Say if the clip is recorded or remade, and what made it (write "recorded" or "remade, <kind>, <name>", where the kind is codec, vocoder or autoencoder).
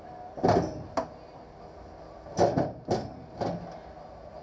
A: recorded